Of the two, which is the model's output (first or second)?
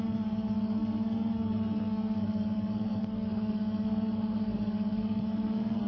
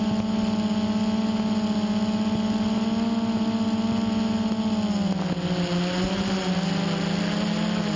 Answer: first